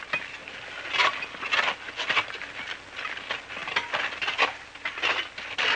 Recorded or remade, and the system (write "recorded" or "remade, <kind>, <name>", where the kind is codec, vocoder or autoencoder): recorded